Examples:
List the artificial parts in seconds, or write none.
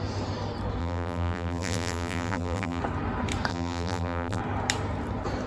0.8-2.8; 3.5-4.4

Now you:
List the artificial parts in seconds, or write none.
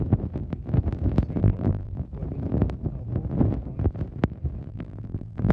1.4-2.0; 4.7-5.5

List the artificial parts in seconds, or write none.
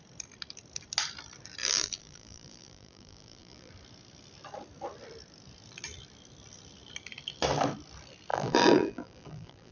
1.6-3.7; 8.3-9.7